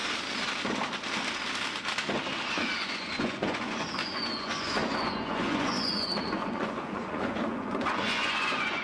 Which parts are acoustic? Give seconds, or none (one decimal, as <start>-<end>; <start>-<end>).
0.0-2.5